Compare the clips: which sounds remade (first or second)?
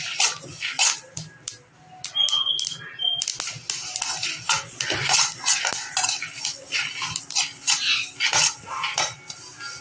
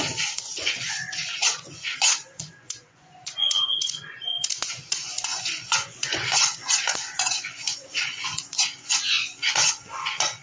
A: second